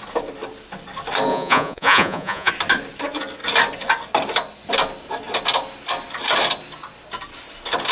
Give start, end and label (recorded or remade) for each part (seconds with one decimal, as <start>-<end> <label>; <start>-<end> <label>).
0.0-1.3 recorded; 1.3-2.5 remade; 2.5-7.9 recorded